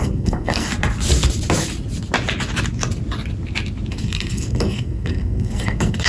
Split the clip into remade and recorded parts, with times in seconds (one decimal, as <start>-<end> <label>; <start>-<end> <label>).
0.0-0.7 remade; 0.7-3.9 recorded; 3.9-6.1 remade